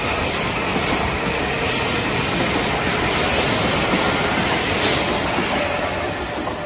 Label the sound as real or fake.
real